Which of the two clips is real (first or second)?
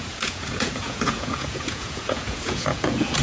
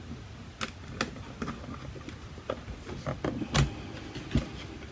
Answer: second